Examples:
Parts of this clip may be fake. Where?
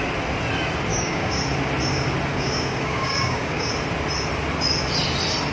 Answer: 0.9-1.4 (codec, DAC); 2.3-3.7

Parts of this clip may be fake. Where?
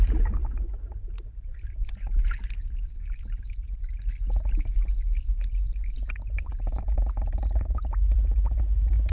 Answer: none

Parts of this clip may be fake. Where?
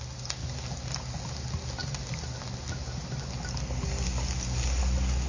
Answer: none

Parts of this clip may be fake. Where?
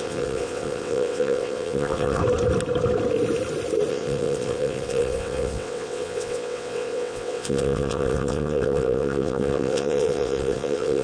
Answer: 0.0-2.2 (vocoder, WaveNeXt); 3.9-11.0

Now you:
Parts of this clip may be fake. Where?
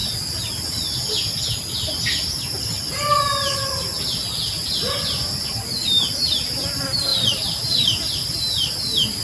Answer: none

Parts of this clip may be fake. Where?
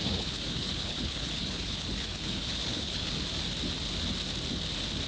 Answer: 0.0-3.1 (codec, HILCodec)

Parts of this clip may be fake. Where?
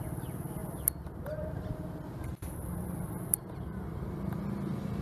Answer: none